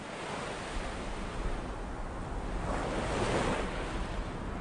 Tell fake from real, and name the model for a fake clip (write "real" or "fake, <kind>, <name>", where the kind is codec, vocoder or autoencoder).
real